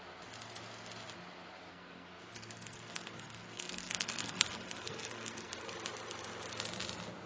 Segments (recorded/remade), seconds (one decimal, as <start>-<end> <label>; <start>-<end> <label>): 0.0-1.7 recorded; 1.7-5.7 remade; 5.7-7.3 recorded